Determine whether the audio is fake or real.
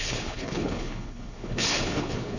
fake